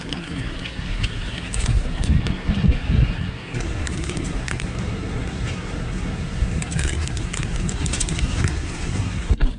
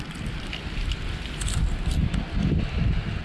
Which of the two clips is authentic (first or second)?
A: second